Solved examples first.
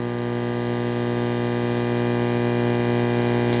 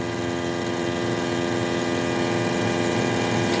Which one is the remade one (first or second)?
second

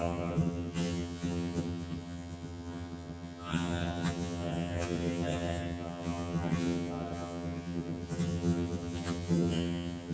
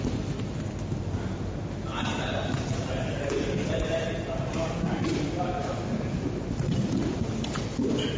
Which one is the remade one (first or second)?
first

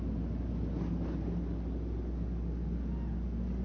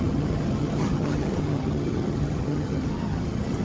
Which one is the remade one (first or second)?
second